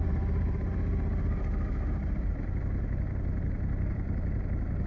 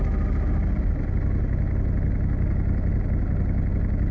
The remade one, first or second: first